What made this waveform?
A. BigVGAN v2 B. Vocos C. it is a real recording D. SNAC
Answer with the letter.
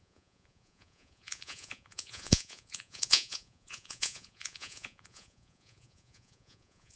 B